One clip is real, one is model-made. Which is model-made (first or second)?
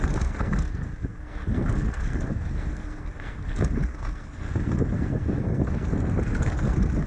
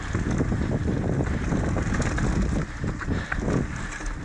first